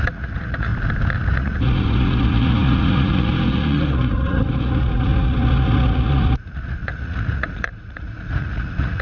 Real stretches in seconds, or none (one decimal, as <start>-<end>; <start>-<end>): 0.7-1.3